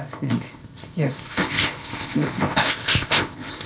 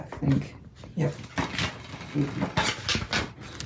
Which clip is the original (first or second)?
second